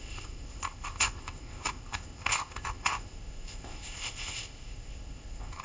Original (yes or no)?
no